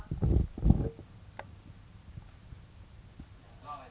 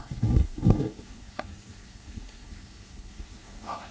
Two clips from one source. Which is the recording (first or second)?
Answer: first